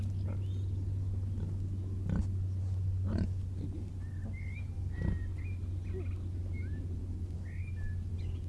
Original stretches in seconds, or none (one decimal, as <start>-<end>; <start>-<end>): 0.0-8.5